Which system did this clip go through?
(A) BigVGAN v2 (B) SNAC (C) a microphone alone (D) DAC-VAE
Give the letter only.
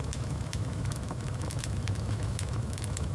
D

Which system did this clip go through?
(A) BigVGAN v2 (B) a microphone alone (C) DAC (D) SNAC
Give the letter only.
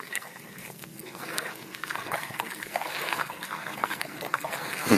D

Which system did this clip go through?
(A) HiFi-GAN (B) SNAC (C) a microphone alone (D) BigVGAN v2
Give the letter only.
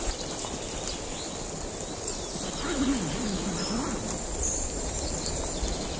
C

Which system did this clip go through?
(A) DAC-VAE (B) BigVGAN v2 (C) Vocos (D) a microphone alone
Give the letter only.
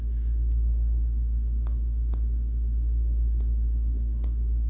D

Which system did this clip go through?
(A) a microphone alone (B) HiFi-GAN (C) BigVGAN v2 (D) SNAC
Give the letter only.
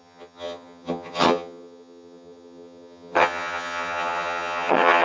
B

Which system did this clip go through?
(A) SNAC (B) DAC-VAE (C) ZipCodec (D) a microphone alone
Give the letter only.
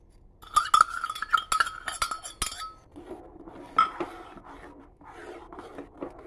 D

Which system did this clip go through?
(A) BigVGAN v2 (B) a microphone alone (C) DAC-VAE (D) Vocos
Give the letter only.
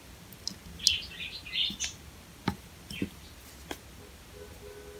B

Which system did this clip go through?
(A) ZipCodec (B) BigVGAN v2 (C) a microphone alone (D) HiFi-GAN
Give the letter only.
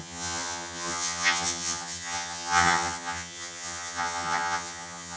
D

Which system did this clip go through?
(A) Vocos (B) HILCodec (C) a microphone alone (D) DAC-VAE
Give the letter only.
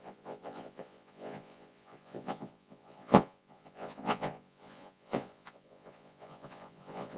A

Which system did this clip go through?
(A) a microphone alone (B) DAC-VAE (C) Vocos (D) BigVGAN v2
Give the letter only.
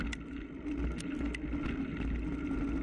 A